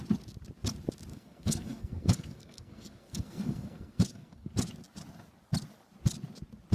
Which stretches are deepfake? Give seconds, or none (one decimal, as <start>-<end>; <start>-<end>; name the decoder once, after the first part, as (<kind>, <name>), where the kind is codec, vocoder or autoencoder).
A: 1.1-4.5 (codec, SNAC)